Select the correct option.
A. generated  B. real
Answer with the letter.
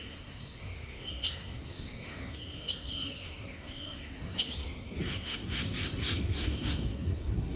A